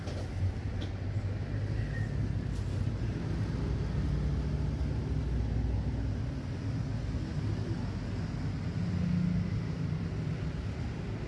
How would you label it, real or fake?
real